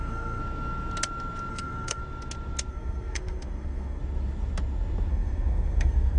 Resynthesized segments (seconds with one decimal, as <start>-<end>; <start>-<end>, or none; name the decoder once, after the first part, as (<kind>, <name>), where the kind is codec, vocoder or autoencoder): 0.0-0.4 (codec, SNAC); 1.5-2.0; 2.7-4.0; 5.1-6.2